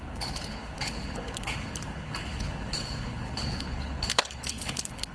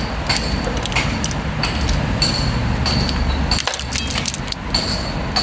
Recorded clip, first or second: second